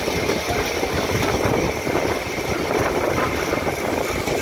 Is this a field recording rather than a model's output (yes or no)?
yes